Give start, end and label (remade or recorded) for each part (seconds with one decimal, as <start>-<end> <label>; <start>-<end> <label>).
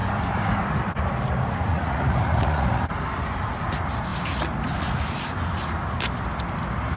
0.0-1.7 recorded; 1.7-2.9 remade; 2.9-7.0 recorded